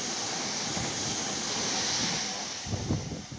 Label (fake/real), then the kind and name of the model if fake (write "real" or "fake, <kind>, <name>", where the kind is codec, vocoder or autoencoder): real